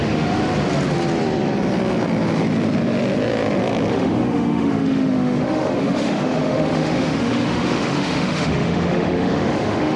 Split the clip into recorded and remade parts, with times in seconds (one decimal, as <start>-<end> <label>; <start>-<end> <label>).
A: 0.0-0.4 remade; 0.4-3.9 recorded; 3.9-10.0 remade